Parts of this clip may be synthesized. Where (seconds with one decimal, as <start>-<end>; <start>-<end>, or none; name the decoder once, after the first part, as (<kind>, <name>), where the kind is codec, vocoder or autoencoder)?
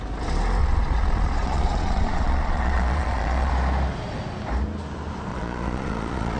0.6-3.5 (vocoder, Vocos); 5.3-6.4